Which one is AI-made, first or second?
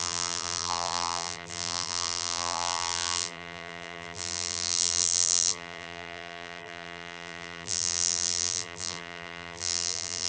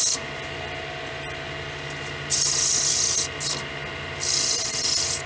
first